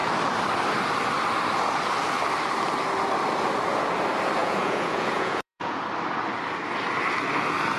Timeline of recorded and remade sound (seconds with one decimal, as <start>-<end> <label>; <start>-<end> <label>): 0.0-4.4 recorded; 4.4-5.8 remade; 5.8-7.8 recorded